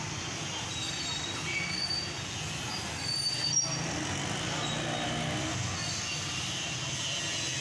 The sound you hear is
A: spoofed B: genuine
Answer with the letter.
B